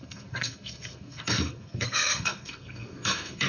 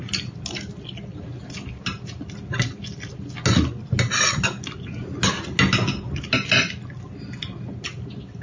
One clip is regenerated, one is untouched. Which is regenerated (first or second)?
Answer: first